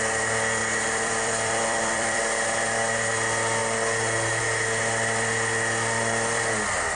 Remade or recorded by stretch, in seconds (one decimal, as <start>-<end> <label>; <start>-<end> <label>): 0.0-0.6 recorded; 0.6-2.2 remade; 2.2-6.9 recorded